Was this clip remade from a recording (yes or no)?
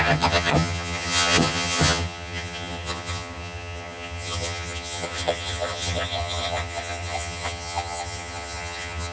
yes